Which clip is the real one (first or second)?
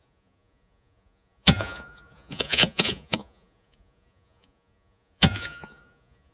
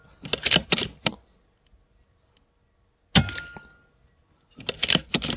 second